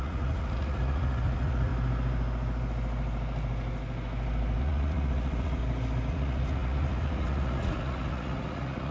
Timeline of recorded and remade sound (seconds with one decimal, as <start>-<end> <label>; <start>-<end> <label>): 0.0-1.7 remade; 1.7-4.6 recorded; 4.6-5.6 remade; 5.6-6.1 recorded; 6.1-8.9 remade